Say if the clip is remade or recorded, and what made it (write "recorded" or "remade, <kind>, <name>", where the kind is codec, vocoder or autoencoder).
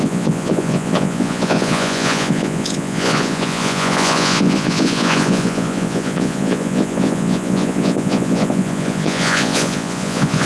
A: remade, vocoder, Vocos